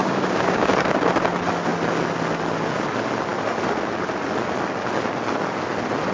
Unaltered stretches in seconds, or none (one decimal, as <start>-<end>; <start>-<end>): 1.1-6.1